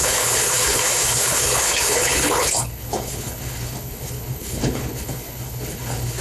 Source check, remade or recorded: remade